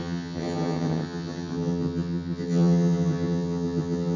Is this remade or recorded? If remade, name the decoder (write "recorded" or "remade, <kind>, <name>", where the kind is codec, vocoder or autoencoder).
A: remade, vocoder, HiFi-GAN